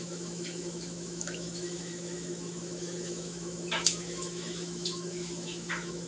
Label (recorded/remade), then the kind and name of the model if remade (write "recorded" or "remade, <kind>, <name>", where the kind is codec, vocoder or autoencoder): remade, autoencoder, DAC-VAE